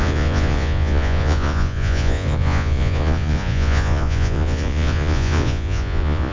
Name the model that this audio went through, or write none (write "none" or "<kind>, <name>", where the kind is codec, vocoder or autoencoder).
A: vocoder, Vocos